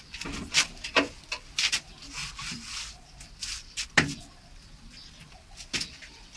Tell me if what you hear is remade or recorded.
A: recorded